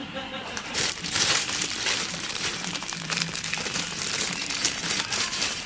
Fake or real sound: fake